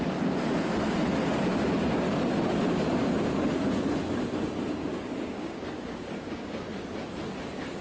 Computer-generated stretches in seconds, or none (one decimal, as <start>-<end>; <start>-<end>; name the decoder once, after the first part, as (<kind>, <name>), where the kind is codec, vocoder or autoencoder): 4.9-6.7 (codec, DAC)